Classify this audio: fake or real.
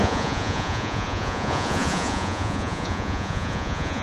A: fake